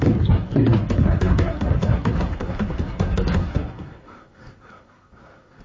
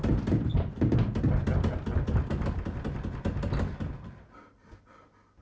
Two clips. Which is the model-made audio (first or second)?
first